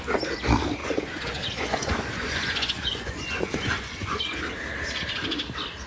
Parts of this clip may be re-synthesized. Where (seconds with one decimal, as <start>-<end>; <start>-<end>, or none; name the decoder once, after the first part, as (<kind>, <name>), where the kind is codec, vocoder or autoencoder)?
0.8-4.2 (vocoder, Vocos)